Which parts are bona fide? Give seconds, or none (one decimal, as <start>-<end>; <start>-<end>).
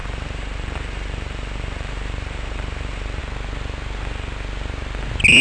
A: 3.2-5.4